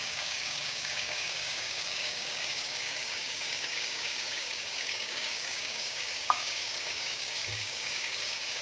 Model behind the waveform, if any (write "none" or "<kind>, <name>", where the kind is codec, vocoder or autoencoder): codec, DAC